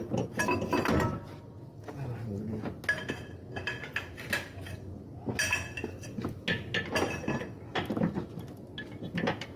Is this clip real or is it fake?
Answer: real